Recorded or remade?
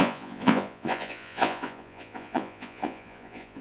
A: remade